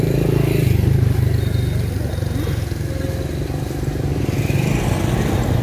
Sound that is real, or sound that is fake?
real